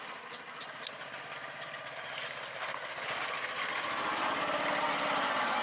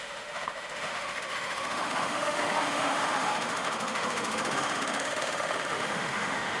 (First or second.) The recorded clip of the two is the first